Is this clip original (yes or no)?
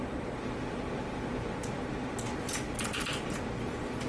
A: yes